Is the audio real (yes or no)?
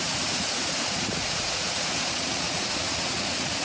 no